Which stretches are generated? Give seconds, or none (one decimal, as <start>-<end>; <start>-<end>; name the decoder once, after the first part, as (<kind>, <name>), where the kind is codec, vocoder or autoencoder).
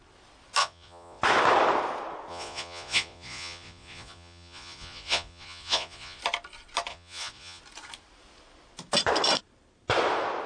0.6-1.2 (vocoder, Vocos); 2.3-6.2; 6.9-7.6